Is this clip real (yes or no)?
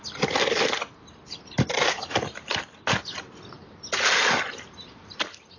yes